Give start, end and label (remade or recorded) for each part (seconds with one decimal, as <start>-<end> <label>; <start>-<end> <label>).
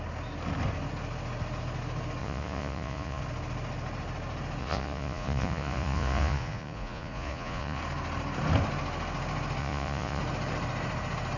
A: 0.0-2.2 recorded; 2.2-3.2 remade; 3.2-4.6 recorded; 4.6-7.8 remade; 7.8-9.6 recorded; 9.6-10.2 remade; 10.2-11.4 recorded